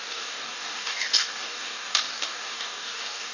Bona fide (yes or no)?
no